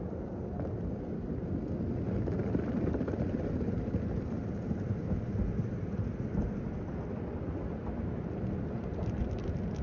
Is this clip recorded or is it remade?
recorded